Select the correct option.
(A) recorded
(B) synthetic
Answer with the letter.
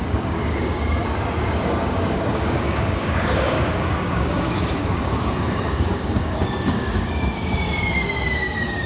B